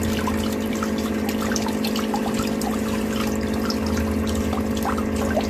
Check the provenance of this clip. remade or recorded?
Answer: recorded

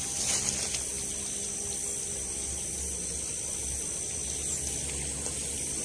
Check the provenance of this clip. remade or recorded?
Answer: recorded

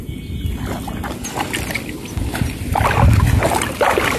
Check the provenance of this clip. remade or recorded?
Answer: recorded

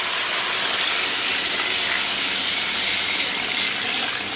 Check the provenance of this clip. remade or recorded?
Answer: recorded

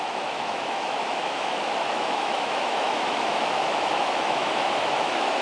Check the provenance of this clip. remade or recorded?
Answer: remade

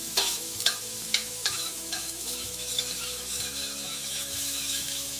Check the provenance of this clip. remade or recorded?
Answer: remade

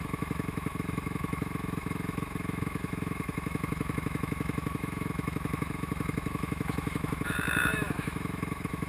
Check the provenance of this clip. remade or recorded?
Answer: remade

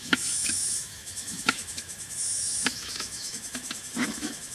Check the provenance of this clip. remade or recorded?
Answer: remade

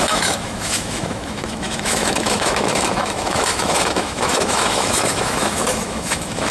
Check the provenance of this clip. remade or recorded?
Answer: remade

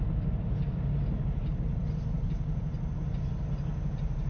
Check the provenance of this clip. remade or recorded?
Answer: recorded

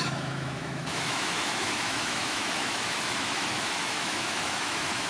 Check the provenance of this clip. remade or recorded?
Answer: remade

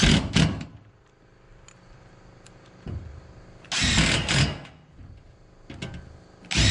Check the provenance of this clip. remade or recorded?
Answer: recorded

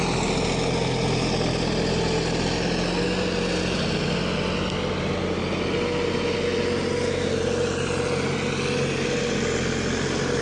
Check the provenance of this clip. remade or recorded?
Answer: recorded